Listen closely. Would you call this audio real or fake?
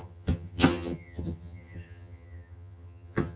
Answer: fake